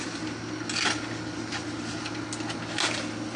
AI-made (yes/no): no